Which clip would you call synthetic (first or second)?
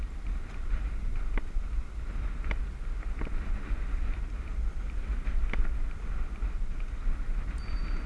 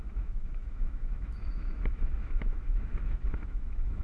second